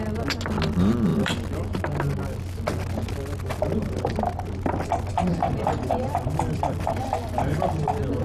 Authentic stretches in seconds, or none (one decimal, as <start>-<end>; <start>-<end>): 0.0-1.1; 1.8-5.1